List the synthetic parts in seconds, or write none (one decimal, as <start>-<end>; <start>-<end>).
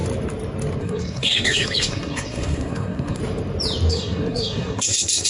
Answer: 0.8-3.2; 3.9-5.3